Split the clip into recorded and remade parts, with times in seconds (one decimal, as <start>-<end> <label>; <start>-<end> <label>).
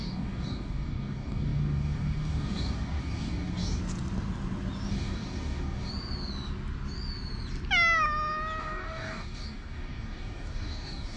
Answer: 0.0-3.8 remade; 3.8-4.9 recorded; 4.9-5.9 remade; 5.9-8.6 recorded; 8.6-11.2 remade